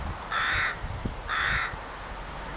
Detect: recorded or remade recorded